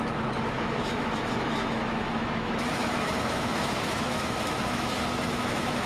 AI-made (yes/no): yes